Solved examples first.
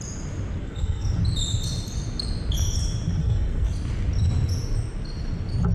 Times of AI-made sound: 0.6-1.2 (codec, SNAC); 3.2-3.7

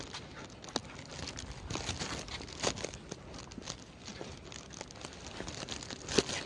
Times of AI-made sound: none

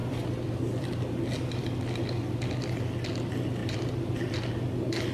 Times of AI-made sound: none

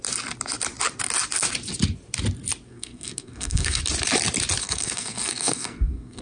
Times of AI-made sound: 2.7-3.8 (codec, SNAC); 4.6-6.2

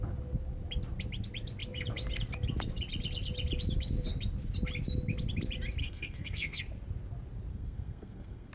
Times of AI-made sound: 5.8-6.6 (codec, SNAC); 7.5-8.5

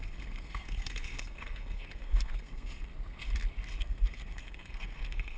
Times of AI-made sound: 0.0-2.9 (codec, SNAC); 3.8-5.4

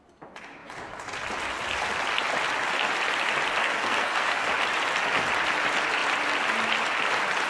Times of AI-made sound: 3.6-4.5 (codec, SNAC)

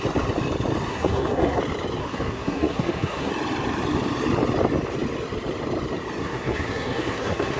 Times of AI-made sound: 0.9-1.6 (codec, SNAC); 2.0-3.3; 6.2-7.6